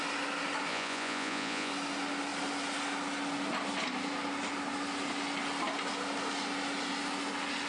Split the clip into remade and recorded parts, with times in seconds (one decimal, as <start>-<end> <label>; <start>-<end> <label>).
0.0-0.7 recorded; 0.7-1.7 remade; 1.7-7.7 recorded